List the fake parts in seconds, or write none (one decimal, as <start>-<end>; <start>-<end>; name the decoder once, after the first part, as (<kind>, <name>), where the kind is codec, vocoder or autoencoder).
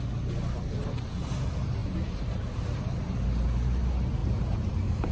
1.8-2.8 (vocoder, BigVGAN v2); 4.2-5.1